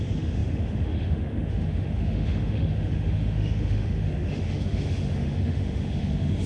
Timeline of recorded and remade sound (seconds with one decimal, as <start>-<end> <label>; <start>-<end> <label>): 0.0-6.5 remade